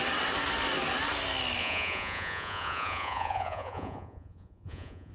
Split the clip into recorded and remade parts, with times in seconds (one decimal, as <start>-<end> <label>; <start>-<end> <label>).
0.0-1.6 recorded; 1.6-5.1 remade